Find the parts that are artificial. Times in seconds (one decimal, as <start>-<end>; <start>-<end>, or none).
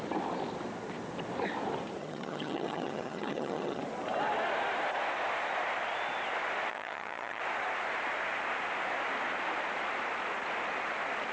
2.0-3.8; 6.7-7.4